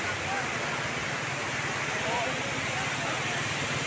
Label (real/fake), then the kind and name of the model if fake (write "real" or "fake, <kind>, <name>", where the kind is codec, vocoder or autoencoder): real